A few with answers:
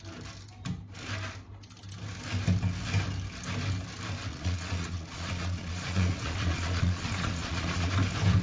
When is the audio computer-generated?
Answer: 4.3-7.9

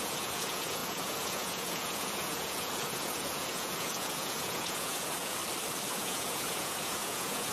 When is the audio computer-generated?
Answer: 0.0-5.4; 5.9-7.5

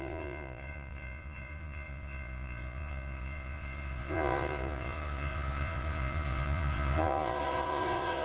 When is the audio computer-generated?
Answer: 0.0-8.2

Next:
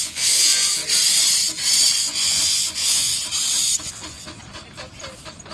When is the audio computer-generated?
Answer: 0.0-0.8; 2.0-3.1; 3.8-4.4

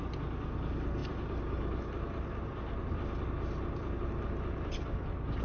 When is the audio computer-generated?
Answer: none